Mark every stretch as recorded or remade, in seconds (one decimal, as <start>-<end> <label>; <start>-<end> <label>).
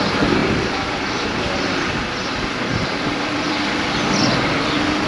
0.0-0.4 recorded; 0.4-3.5 remade; 3.5-5.1 recorded